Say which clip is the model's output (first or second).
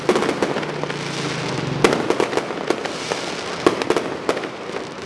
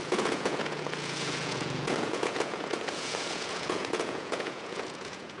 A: second